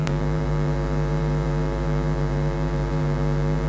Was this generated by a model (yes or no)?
yes